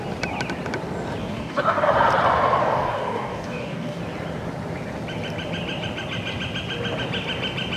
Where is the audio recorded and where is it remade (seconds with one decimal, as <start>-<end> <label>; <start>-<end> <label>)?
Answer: 0.0-1.2 recorded; 1.2-1.9 remade; 1.9-2.6 recorded; 2.6-4.0 remade; 4.0-7.8 recorded

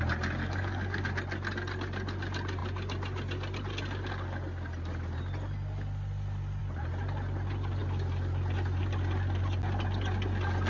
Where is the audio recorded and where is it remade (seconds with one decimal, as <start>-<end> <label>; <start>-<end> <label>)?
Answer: 0.0-0.4 recorded; 0.4-1.0 remade; 1.0-10.7 recorded

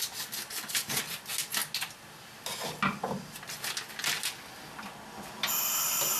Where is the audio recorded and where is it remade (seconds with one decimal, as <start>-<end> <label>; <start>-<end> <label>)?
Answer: 0.0-0.5 recorded; 0.5-1.0 remade; 1.0-6.2 recorded

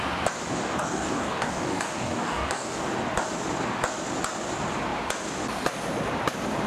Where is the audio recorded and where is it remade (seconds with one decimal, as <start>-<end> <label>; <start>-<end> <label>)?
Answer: 0.0-0.5 recorded; 0.5-2.9 remade; 2.9-6.7 recorded

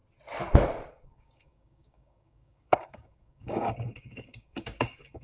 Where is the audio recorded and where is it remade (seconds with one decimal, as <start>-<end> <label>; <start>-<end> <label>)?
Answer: 0.0-0.9 recorded; 0.9-5.2 remade

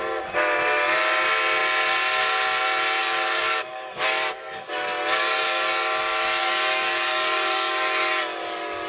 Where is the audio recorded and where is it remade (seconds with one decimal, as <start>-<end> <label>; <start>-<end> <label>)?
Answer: 0.0-3.0 recorded; 3.0-5.7 remade; 5.7-6.4 recorded; 6.4-8.9 remade

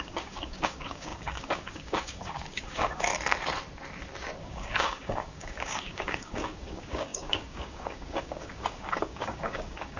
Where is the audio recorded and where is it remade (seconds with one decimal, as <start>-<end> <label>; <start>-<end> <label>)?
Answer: 0.0-3.1 remade; 3.1-4.4 recorded; 4.4-10.0 remade